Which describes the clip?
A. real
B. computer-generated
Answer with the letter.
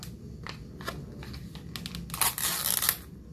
A